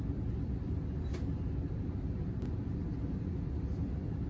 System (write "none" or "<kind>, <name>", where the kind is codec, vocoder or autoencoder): none